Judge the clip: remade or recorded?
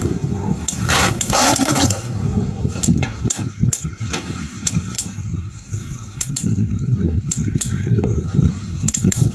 remade